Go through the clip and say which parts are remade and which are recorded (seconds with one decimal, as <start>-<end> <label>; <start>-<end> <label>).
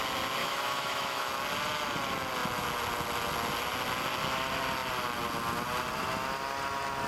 0.0-0.4 recorded; 0.4-1.3 remade; 1.3-7.1 recorded